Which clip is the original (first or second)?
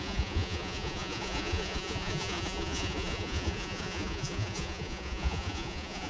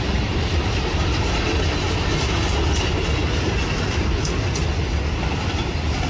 second